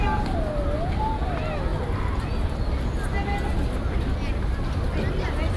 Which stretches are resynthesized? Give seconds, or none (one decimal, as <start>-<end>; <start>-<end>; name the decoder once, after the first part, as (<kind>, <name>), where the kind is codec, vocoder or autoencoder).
none